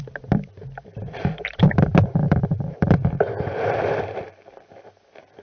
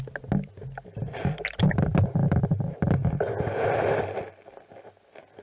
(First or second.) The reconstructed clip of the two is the first